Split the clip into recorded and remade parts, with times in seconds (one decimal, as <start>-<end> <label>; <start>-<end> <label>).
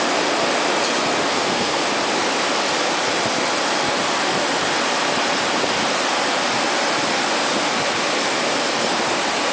0.0-1.3 recorded; 1.3-1.8 remade; 1.8-9.5 recorded